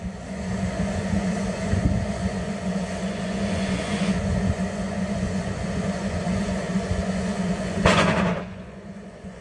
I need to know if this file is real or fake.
fake